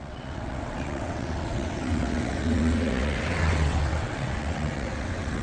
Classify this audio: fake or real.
fake